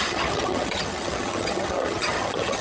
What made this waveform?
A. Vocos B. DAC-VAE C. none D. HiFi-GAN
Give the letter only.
D